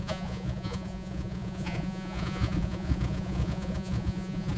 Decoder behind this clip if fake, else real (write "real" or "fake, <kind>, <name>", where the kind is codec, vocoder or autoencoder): fake, vocoder, Vocos